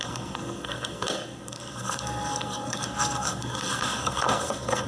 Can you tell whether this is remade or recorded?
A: remade